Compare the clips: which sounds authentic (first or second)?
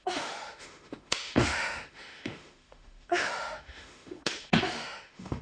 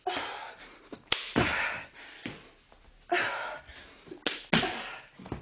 second